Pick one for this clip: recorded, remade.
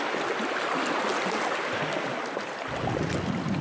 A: recorded